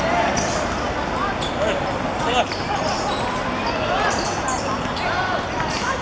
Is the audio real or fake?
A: real